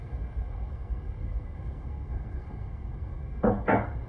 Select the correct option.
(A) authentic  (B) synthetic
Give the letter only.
B